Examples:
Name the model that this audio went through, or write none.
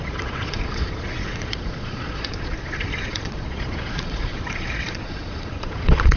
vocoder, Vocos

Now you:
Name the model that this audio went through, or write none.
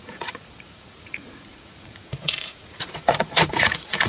vocoder, Vocos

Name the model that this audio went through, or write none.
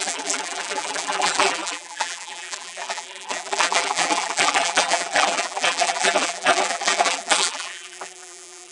vocoder, BigVGAN v2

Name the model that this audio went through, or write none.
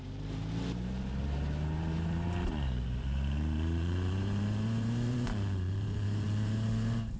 vocoder, BigVGAN v2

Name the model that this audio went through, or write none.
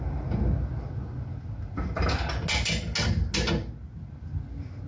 none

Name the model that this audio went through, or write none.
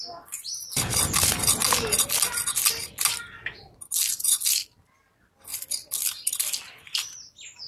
none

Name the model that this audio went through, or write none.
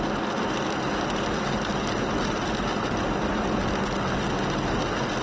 none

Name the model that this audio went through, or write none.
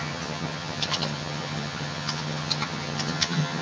vocoder, HiFi-GAN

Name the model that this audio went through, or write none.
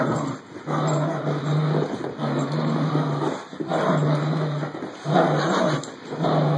none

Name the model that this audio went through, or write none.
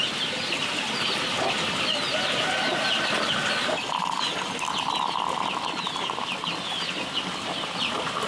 none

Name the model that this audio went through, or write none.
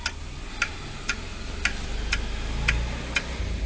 none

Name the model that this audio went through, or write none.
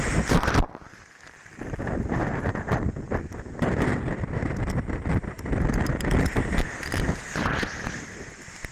none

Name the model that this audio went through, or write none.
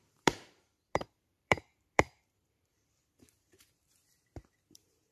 vocoder, BigVGAN v2